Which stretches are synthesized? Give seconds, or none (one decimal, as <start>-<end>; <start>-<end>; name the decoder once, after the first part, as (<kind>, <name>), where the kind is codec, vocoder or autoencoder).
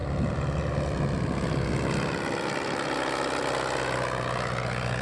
none